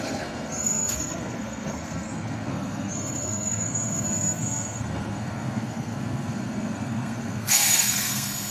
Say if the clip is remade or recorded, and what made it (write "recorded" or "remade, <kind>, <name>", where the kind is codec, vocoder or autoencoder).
remade, codec, SNAC